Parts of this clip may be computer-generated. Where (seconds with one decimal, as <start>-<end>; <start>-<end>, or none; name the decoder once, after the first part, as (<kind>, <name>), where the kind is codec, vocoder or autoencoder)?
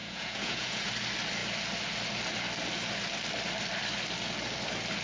0.0-0.9 (vocoder, Vocos)